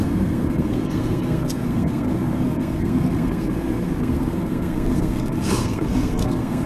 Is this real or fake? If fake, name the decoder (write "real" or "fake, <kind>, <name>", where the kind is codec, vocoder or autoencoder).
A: fake, codec, SNAC